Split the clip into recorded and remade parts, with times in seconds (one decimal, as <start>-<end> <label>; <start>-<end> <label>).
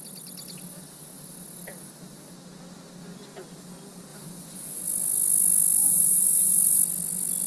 0.0-4.1 recorded; 4.1-4.8 remade; 4.8-5.8 recorded; 5.8-6.5 remade; 6.5-7.5 recorded